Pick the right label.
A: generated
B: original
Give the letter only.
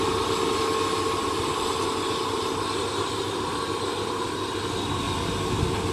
B